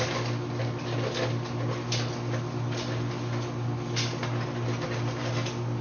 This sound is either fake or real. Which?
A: real